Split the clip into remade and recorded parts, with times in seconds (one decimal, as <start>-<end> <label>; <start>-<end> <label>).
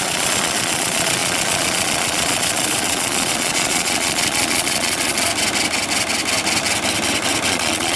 0.0-5.3 remade; 5.3-7.5 recorded; 7.5-8.0 remade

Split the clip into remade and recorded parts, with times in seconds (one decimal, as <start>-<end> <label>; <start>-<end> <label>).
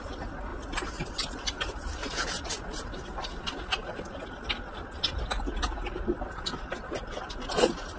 0.0-0.5 recorded; 0.5-1.4 remade; 1.4-8.0 recorded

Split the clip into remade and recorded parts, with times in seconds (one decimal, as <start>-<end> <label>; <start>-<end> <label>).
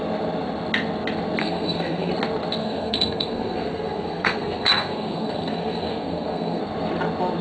0.0-1.4 recorded; 1.4-2.1 remade; 2.1-2.6 recorded; 2.6-6.6 remade; 6.6-7.4 recorded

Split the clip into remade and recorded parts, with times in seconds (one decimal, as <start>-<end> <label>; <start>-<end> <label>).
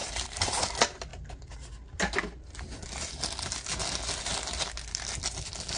0.0-0.6 remade; 0.6-5.8 recorded